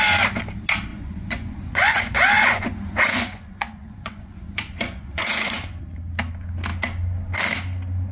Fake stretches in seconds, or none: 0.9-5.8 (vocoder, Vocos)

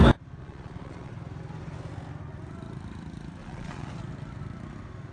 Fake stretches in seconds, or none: 0.4-1.1 (vocoder, Vocos); 3.4-3.9

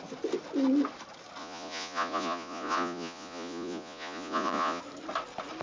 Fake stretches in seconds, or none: 1.4-4.8 (vocoder, Vocos)